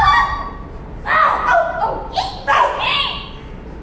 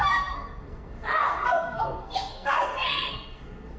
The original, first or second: first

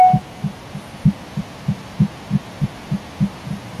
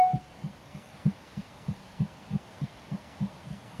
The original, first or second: first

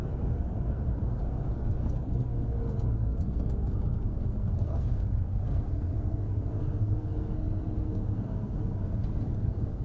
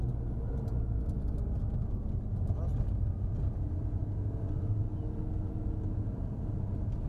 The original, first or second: second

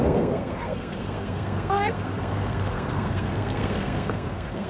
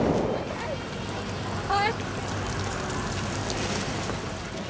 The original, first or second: second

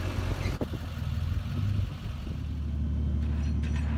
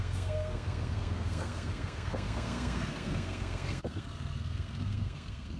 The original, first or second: first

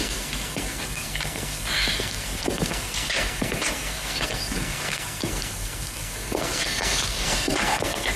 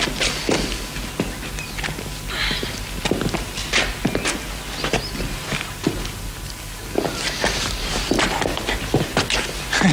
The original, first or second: second